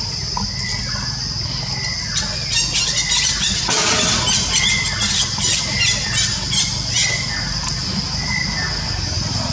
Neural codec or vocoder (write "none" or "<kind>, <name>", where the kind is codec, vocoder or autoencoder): none